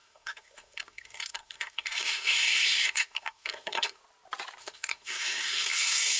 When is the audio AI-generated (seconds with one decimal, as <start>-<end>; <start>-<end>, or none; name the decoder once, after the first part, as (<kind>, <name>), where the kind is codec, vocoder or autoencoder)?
0.0-4.0 (codec, SNAC); 4.6-6.2